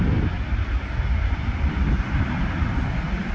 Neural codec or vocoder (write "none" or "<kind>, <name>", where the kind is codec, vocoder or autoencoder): none